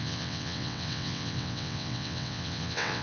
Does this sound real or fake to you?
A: fake